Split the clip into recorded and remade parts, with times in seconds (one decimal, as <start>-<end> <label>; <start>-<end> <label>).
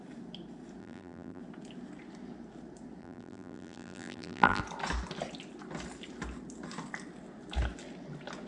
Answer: 0.0-0.8 recorded; 0.8-1.4 remade; 1.4-3.0 recorded; 3.0-4.6 remade; 4.6-8.5 recorded